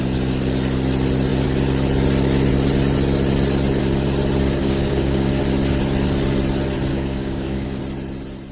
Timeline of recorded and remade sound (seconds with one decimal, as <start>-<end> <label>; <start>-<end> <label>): 0.0-4.6 recorded; 4.6-5.4 remade; 5.4-6.9 recorded; 6.9-7.8 remade; 7.8-8.5 recorded